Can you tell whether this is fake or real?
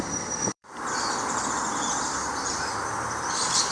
fake